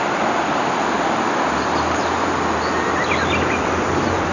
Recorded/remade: recorded